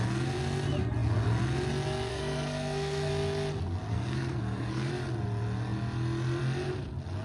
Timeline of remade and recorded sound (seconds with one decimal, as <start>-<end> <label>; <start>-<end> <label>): 0.0-2.1 recorded; 2.1-3.1 remade; 3.1-3.9 recorded; 3.9-4.9 remade; 4.9-7.2 recorded